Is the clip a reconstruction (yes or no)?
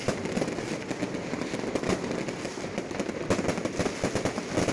no